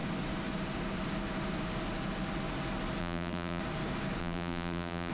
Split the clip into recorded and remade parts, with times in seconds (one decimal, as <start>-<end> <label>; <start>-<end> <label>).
0.0-3.0 recorded; 3.0-3.6 remade; 3.6-4.2 recorded; 4.2-5.1 remade